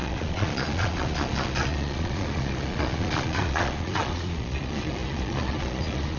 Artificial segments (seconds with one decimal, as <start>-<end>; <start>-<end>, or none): 0.0-6.2